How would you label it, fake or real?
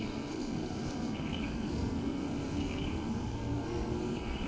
fake